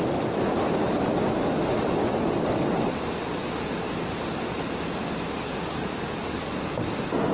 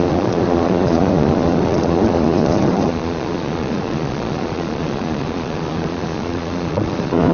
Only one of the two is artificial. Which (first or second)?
second